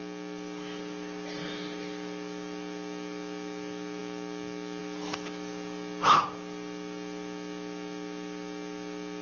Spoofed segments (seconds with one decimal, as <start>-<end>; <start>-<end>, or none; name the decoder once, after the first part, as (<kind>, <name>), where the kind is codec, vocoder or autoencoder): none